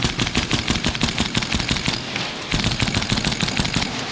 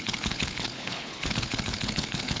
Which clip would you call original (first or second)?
first